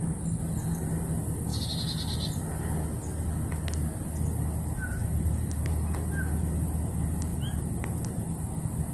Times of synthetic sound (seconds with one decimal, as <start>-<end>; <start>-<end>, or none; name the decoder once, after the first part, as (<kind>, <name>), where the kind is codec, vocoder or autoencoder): none